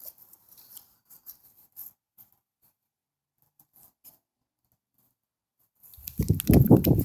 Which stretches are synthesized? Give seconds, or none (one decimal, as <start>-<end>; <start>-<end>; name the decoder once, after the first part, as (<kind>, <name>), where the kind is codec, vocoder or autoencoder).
none